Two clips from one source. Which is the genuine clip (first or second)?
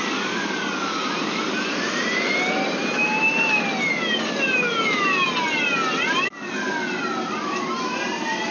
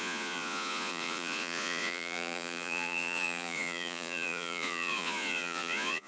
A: first